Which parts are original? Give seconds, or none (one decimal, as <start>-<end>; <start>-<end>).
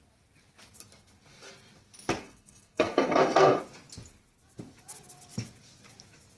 0.0-2.2; 3.6-6.4